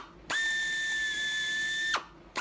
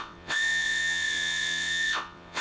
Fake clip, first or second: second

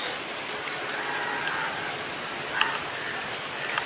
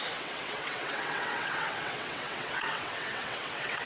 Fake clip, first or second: second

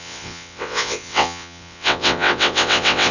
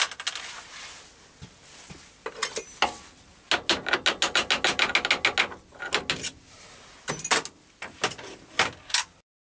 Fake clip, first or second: first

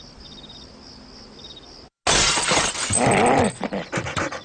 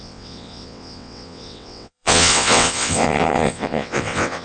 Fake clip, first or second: second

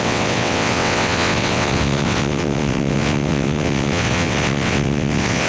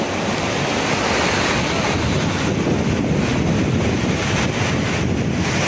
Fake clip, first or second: first